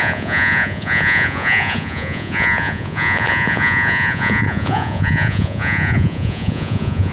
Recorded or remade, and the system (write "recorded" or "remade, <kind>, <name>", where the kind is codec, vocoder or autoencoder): remade, vocoder, Vocos